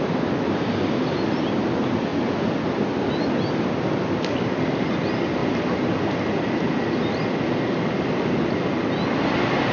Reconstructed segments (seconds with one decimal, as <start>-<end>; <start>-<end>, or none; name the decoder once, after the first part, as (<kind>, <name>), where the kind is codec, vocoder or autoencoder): none